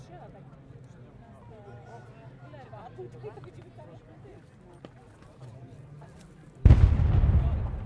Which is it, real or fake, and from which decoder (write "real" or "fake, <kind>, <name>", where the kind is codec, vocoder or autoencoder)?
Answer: real